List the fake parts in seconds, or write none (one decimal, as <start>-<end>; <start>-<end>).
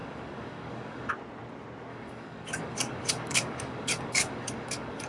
0.0-1.1; 1.9-5.1